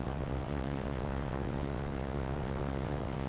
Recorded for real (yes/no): no